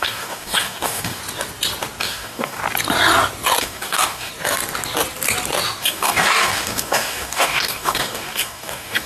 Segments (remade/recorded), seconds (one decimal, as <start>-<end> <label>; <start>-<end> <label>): 0.0-1.2 remade; 1.2-2.0 recorded; 2.0-2.6 remade; 2.6-3.6 recorded; 3.6-4.3 remade; 4.3-5.8 recorded; 5.8-9.1 remade